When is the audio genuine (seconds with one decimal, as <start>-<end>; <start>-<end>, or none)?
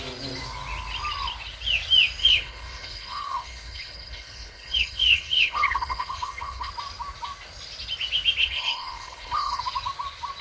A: 0.0-2.2; 6.7-8.4; 9.6-10.4